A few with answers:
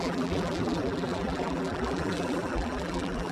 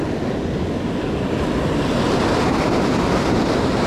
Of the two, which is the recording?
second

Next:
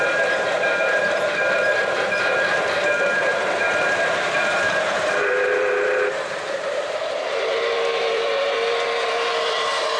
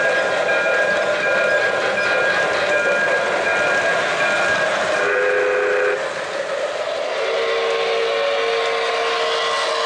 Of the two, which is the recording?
second